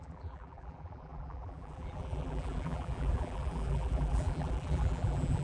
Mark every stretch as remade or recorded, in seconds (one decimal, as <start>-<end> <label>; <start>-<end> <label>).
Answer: 0.0-5.4 remade